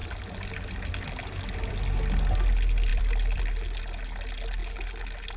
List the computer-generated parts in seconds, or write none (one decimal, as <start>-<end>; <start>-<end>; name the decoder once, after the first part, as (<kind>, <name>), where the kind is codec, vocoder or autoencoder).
2.9-3.4 (vocoder, BigVGAN v2)